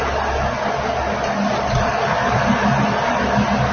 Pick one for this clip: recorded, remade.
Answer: recorded